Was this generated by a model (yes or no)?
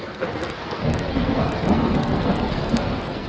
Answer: yes